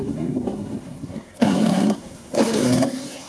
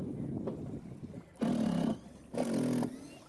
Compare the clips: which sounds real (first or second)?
second